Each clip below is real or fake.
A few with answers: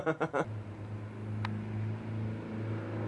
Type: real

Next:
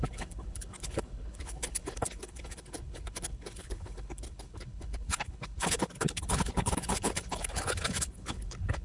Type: fake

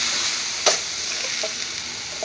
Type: real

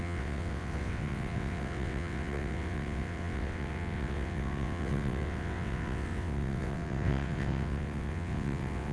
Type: fake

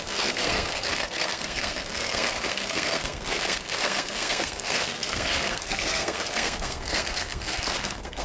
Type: fake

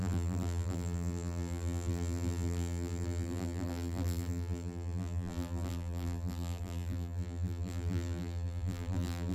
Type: fake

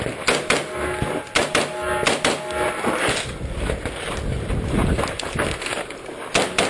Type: real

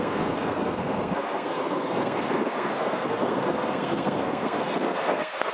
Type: fake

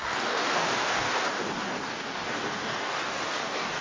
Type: fake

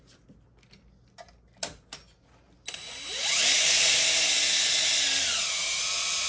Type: real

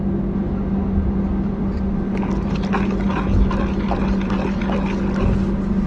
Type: real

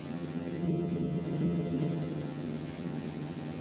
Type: fake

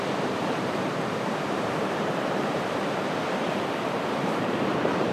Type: fake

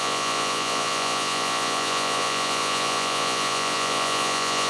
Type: fake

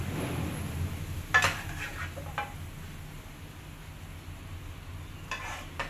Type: real